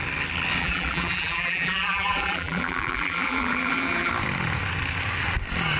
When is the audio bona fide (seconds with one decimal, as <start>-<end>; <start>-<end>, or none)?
0.0-0.6; 4.1-5.8